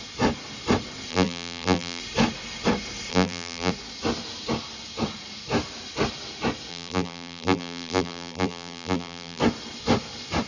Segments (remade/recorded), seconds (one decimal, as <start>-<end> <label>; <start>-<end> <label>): 0.0-1.1 recorded; 1.1-2.0 remade; 2.0-3.1 recorded; 3.1-3.7 remade; 3.7-6.7 recorded; 6.7-9.4 remade; 9.4-10.5 recorded